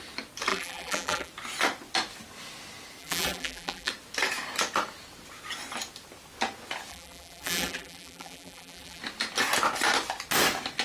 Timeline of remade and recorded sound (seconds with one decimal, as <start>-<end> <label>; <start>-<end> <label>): 0.0-0.5 recorded; 0.5-1.3 remade; 1.3-3.0 recorded; 3.0-3.9 remade; 3.9-6.9 recorded; 6.9-9.0 remade; 9.0-10.8 recorded